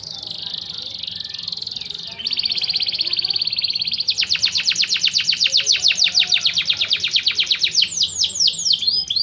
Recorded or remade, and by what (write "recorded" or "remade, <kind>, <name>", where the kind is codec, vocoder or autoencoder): recorded